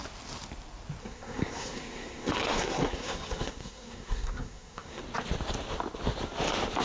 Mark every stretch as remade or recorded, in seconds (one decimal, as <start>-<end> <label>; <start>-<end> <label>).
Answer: 0.0-1.0 recorded; 1.0-5.0 remade; 5.0-6.8 recorded